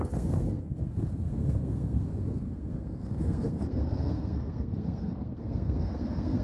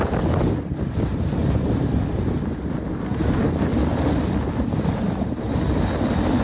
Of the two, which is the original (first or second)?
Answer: second